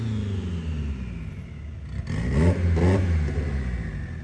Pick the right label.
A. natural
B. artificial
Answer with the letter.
A